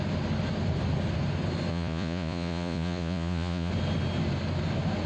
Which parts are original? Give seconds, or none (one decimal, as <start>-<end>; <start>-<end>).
0.0-1.7; 3.7-5.1